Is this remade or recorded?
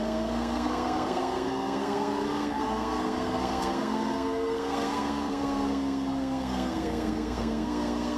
remade